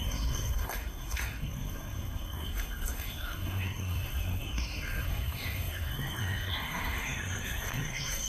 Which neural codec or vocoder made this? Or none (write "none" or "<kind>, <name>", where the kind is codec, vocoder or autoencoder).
codec, SNAC